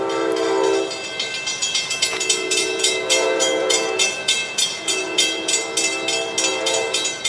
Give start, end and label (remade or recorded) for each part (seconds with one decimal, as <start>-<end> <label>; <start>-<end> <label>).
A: 0.0-1.6 recorded; 1.6-5.6 remade; 5.6-6.5 recorded; 6.5-7.3 remade